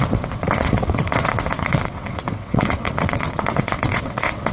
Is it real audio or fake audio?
fake